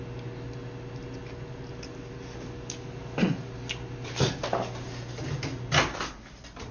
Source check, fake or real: real